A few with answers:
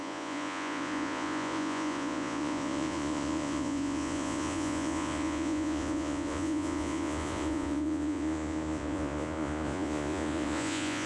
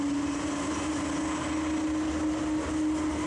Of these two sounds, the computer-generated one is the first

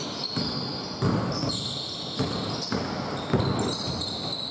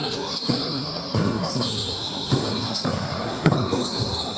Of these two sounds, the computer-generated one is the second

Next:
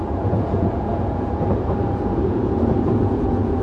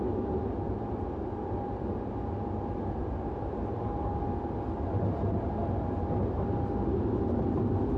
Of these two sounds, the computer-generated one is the first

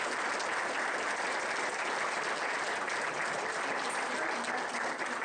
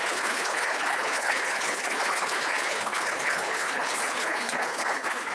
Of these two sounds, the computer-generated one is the second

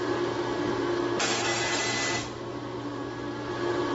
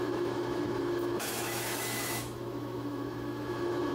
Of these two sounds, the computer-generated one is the second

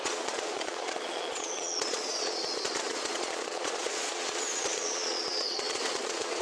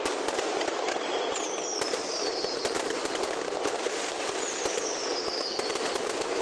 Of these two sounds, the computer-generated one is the first